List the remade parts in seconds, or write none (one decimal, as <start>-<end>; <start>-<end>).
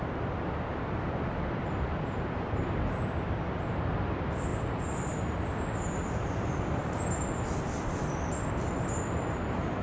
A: none